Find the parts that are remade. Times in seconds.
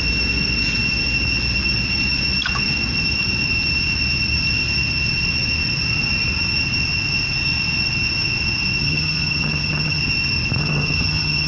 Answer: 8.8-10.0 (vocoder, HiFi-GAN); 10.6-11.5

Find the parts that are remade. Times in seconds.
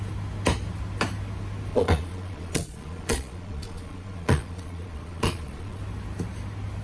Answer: 1.7-5.8 (vocoder, Vocos)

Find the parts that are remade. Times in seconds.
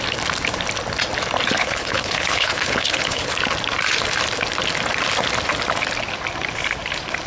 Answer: 1.6-3.3 (codec, HILCodec)